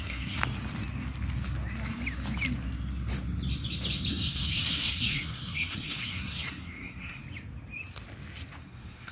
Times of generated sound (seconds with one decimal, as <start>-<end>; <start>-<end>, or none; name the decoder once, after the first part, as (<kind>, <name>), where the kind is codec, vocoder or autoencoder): 0.0-0.4 (codec, SNAC); 4.1-7.2; 8.6-9.1